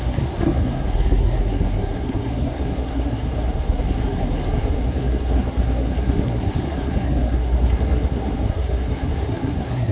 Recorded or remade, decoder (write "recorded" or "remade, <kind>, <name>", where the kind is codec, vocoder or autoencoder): remade, codec, SNAC